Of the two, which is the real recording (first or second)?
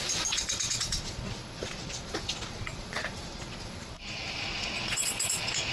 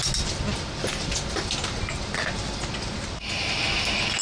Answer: second